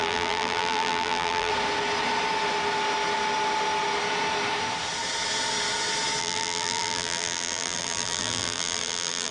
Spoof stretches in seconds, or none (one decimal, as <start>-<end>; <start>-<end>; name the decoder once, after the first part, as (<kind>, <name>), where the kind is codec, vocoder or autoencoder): 0.0-1.5 (vocoder, BigVGAN v2); 6.2-9.3